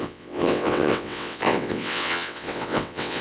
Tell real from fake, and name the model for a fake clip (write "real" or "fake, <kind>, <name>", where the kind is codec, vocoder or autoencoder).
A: fake, vocoder, WaveNeXt